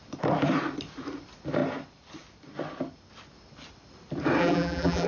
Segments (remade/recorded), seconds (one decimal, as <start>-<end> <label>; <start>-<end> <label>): 0.0-4.4 recorded; 4.4-5.1 remade